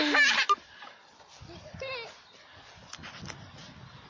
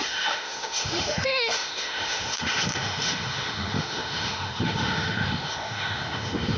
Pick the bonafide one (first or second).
first